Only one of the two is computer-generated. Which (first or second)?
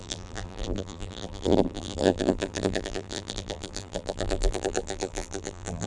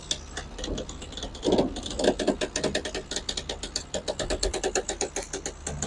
first